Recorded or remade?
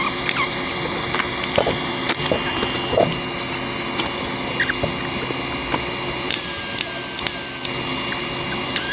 recorded